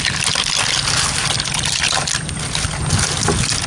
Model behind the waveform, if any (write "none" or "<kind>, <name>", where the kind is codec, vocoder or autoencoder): none